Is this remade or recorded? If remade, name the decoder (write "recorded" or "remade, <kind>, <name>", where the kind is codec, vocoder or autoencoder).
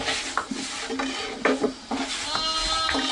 recorded